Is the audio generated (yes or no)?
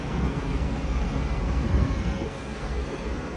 yes